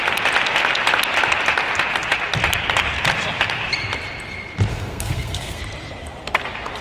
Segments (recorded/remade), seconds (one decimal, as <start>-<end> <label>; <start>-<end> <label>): 0.0-4.7 recorded; 4.7-5.6 remade; 5.6-6.8 recorded